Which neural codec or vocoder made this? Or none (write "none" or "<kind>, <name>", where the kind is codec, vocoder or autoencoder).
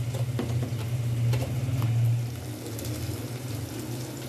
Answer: none